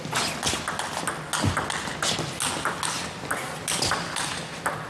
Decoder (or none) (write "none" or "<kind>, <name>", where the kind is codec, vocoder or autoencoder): none